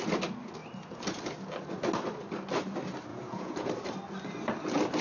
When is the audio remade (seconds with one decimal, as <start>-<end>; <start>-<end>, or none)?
3.1-3.7